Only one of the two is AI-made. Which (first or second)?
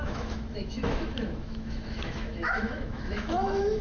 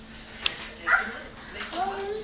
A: first